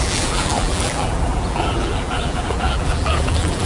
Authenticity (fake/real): fake